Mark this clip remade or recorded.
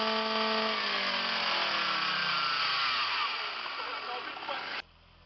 recorded